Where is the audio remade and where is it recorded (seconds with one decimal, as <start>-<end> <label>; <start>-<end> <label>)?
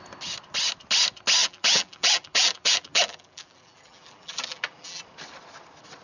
0.0-1.4 recorded; 1.4-5.0 remade; 5.0-6.0 recorded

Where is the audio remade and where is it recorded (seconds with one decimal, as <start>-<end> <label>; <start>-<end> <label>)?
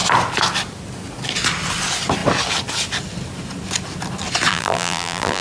0.0-4.5 recorded; 4.5-5.4 remade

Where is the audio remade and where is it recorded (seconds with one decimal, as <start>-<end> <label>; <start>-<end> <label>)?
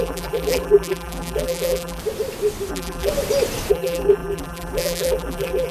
0.0-2.0 remade; 2.0-2.7 recorded; 2.7-3.1 remade; 3.1-3.7 recorded; 3.7-5.7 remade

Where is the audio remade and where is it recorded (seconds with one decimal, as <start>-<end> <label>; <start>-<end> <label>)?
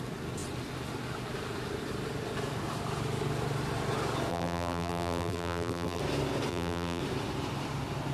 0.0-4.3 recorded; 4.3-6.0 remade; 6.0-6.5 recorded; 6.5-7.0 remade; 7.0-8.1 recorded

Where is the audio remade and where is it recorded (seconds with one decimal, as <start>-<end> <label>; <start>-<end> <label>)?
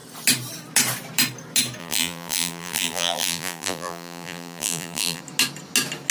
0.0-1.8 recorded; 1.8-5.2 remade; 5.2-6.1 recorded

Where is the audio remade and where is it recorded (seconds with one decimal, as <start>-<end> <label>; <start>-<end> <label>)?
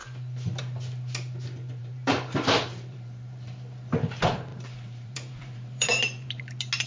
0.0-1.8 recorded; 1.8-3.5 remade; 3.5-4.5 recorded; 4.5-6.4 remade; 6.4-6.9 recorded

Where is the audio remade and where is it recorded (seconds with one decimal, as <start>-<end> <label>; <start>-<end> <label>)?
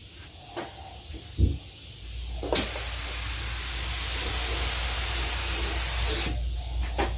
0.0-7.2 recorded